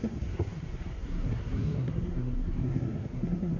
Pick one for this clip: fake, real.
fake